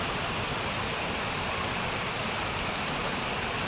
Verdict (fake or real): real